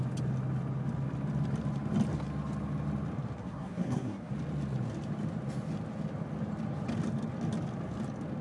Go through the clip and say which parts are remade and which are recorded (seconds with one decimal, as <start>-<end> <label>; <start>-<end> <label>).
0.0-3.4 recorded; 3.4-4.3 remade; 4.3-8.4 recorded